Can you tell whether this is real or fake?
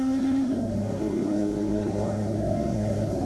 fake